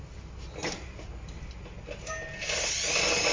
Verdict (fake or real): real